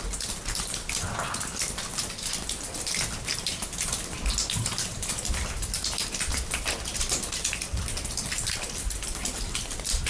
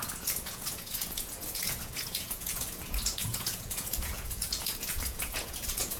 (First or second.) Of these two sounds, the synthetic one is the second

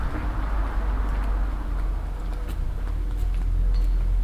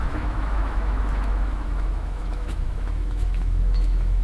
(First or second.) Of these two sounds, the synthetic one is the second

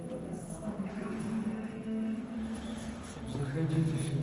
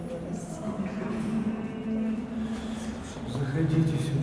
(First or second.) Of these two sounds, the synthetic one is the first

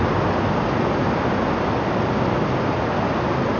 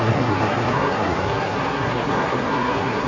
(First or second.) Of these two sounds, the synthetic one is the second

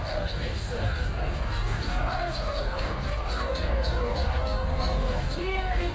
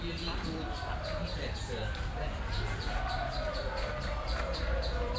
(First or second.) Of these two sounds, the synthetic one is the first